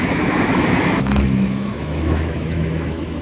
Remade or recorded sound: remade